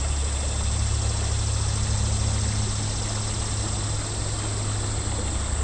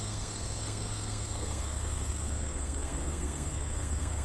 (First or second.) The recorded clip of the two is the first